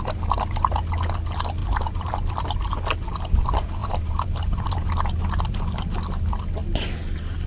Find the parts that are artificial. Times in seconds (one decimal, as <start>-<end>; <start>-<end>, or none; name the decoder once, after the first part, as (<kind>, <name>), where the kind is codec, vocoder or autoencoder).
1.6-2.1 (vocoder, BigVGAN v2); 3.8-5.2